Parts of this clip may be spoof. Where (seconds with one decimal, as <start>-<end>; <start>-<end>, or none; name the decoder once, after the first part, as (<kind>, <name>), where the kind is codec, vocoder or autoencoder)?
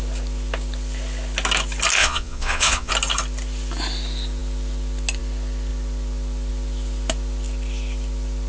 2.0-2.9 (vocoder, Vocos)